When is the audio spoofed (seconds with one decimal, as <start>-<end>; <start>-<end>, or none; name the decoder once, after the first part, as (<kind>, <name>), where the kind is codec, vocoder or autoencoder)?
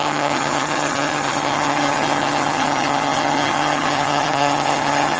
0.0-5.2 (vocoder, HiFi-GAN)